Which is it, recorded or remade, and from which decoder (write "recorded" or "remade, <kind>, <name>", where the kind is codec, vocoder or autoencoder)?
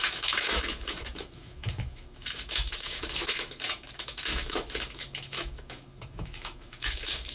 remade, autoencoder, DAC-VAE